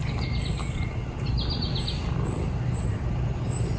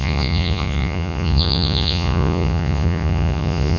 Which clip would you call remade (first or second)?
second